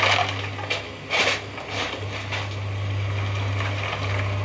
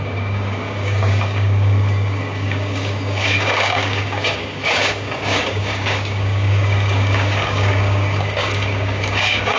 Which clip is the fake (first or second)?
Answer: second